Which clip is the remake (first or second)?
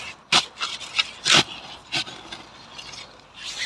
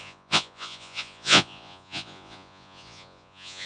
second